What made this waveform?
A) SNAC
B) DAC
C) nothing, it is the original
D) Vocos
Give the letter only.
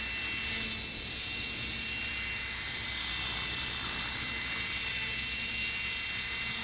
C